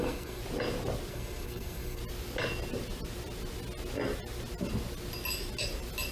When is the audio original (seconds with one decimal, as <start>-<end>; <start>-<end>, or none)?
0.4-1.1; 2.0-6.1